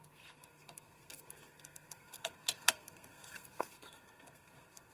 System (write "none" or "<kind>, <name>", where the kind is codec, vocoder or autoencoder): codec, SNAC